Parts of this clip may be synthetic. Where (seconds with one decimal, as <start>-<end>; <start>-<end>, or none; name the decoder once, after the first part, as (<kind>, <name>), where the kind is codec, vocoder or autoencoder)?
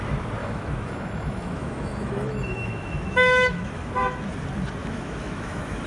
0.4-3.9 (autoencoder, DAC-VAE); 4.8-5.9